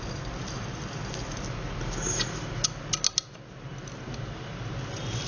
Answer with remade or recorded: recorded